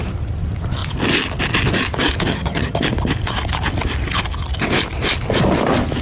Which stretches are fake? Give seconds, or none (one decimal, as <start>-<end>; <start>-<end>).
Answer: 2.3-2.8